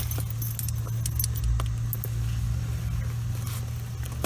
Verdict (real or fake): real